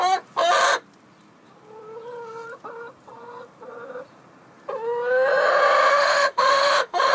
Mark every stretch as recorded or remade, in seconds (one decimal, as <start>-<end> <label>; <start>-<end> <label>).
0.0-5.9 recorded; 5.9-7.1 remade